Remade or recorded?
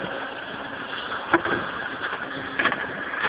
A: recorded